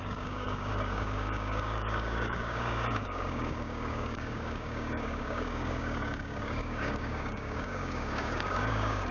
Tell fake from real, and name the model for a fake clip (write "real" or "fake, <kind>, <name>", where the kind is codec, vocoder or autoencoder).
fake, codec, DAC